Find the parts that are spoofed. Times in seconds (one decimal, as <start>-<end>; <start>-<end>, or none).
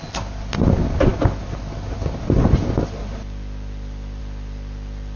none